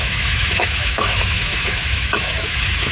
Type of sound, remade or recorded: remade